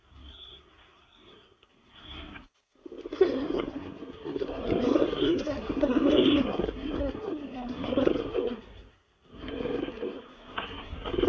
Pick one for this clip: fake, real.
fake